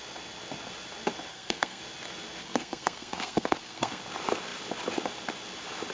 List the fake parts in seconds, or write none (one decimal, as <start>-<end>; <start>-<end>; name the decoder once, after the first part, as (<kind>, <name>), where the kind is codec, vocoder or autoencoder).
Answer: 1.3-1.8 (codec, SNAC); 2.4-4.0